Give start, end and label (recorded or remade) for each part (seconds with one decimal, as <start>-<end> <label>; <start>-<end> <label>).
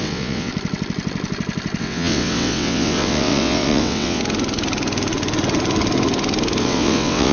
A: 0.0-0.5 remade; 0.5-1.8 recorded; 1.8-4.2 remade; 4.2-6.6 recorded; 6.6-7.3 remade